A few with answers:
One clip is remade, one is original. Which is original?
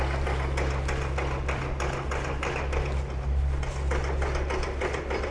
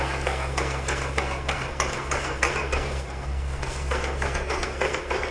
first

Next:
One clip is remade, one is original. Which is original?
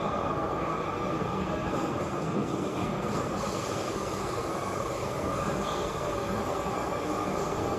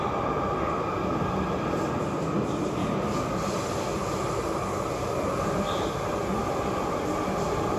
second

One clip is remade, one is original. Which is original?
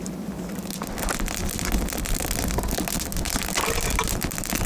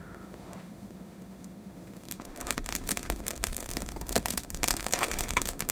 first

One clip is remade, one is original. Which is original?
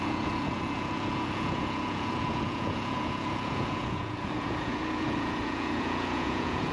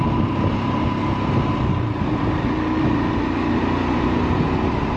second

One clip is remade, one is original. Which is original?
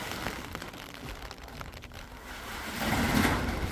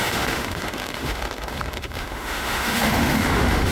first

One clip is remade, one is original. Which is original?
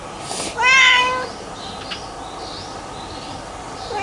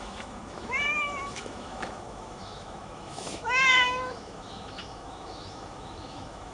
first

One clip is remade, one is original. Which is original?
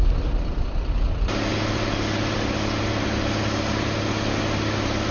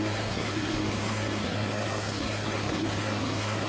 first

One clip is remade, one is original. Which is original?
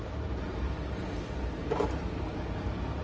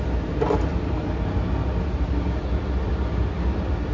second